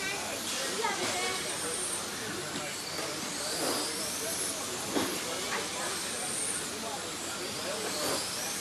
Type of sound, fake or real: real